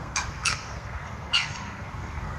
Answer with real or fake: fake